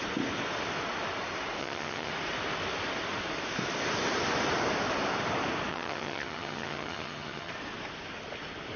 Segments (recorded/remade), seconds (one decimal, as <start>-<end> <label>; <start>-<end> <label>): 0.0-1.6 recorded; 1.6-2.1 remade; 2.1-5.7 recorded; 5.7-7.5 remade; 7.5-8.8 recorded